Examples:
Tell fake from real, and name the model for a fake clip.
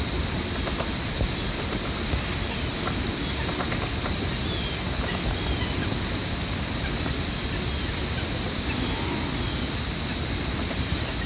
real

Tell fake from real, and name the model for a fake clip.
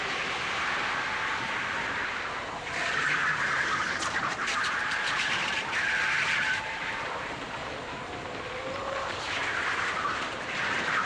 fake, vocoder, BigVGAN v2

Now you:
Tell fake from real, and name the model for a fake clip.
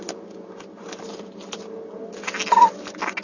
real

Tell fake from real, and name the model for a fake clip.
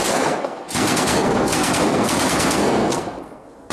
fake, codec, SNAC